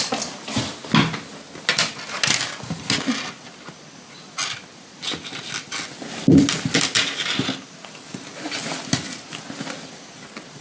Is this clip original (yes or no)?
yes